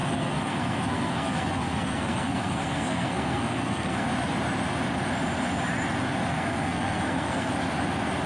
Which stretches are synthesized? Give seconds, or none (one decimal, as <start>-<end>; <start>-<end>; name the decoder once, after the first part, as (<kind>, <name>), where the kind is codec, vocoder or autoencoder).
0.0-4.1 (codec, SNAC); 6.3-7.5